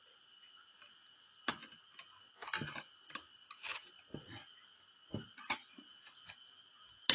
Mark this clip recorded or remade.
recorded